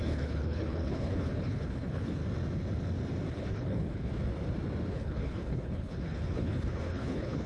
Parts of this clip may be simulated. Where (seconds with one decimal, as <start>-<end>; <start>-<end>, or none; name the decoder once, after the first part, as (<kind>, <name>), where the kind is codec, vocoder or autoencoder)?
0.0-2.2 (codec, HILCodec); 3.3-4.1; 4.9-7.5

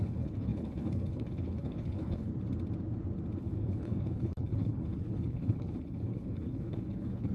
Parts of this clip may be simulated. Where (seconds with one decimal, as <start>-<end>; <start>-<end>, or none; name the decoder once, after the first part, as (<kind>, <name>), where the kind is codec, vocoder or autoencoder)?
0.0-2.3 (codec, HILCodec); 3.4-7.3